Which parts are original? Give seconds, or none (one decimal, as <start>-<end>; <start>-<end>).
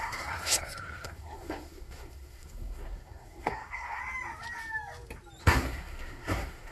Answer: 4.0-5.4